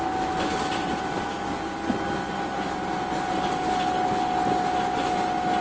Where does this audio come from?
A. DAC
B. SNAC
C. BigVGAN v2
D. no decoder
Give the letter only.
D